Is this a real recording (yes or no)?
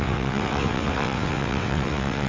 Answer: no